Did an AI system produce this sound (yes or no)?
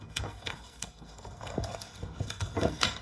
yes